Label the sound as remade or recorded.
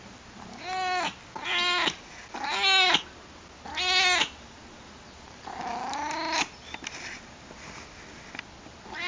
recorded